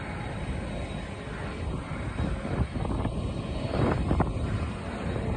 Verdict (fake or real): real